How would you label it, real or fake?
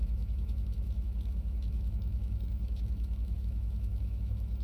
fake